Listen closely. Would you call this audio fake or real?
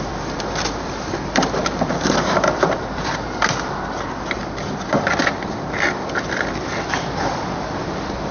fake